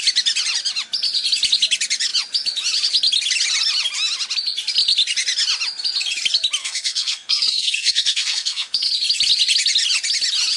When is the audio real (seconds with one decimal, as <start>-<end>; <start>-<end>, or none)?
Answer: 0.0-6.6; 8.9-10.6